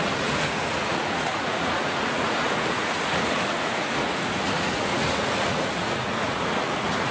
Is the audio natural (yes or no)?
no